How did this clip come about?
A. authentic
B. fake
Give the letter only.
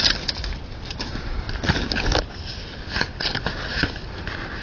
A